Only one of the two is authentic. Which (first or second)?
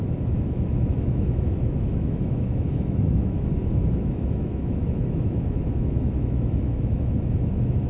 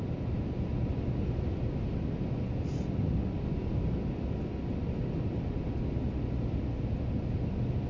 second